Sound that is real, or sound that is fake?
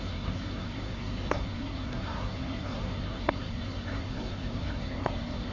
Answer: fake